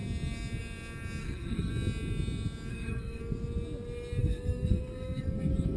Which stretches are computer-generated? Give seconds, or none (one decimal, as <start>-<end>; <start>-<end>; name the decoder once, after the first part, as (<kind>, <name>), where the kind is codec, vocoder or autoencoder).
1.2-1.7 (codec, SNAC); 2.7-3.2; 4.2-5.8